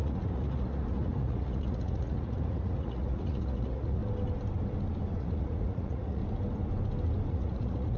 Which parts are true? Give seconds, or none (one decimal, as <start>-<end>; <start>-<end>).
4.0-5.2; 6.2-7.3